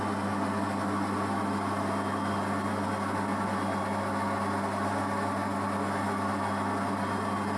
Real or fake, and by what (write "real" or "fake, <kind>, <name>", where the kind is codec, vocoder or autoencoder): real